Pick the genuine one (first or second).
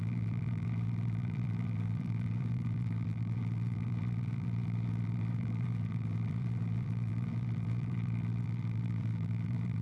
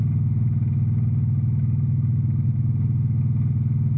second